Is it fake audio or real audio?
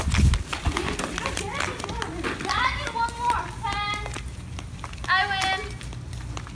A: real